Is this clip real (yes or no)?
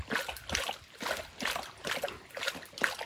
yes